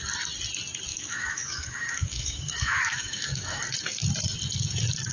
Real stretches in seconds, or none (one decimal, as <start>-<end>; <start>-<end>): 0.0-0.9; 3.6-5.1